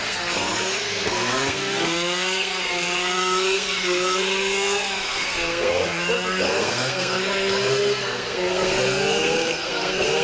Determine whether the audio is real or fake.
fake